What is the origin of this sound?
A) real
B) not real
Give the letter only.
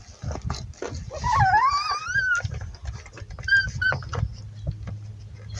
A